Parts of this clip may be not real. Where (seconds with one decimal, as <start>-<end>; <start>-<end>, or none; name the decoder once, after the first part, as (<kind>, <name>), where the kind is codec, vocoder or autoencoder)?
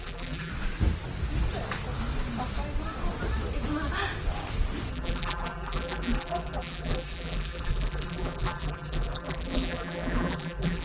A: 0.0-0.5 (vocoder, BigVGAN v2); 4.9-10.8